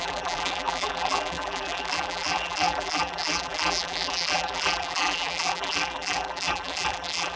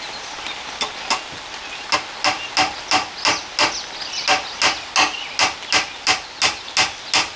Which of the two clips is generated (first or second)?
first